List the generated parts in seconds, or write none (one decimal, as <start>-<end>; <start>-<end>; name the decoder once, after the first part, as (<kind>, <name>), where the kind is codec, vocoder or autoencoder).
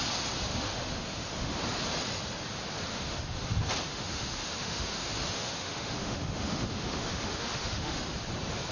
0.5-1.6 (autoencoder, DAC-VAE); 2.9-3.4; 3.9-8.0